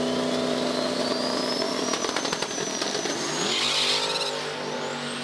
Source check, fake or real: real